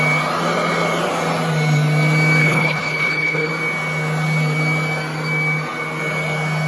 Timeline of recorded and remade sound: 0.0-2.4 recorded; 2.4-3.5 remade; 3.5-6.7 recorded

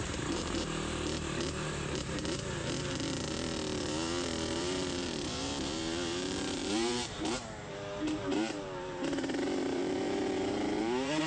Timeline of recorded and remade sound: 0.0-11.3 remade

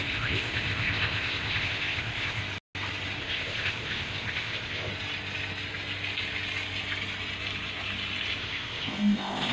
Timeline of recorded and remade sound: 0.0-2.4 remade; 2.4-3.2 recorded; 3.2-4.9 remade; 4.9-8.4 recorded; 8.4-9.5 remade

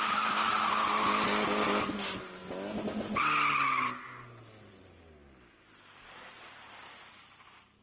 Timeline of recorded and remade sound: 0.0-7.8 recorded

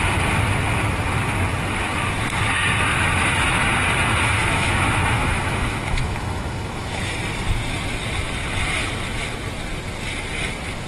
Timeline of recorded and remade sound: 0.0-2.9 recorded; 2.9-3.5 remade; 3.5-4.4 recorded; 4.4-7.0 remade; 7.0-10.9 recorded

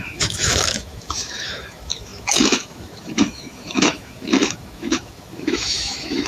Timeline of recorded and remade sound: 0.0-6.3 remade

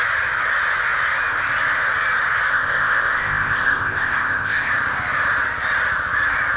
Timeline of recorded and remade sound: 0.0-2.5 recorded; 2.5-4.7 remade; 4.7-6.6 recorded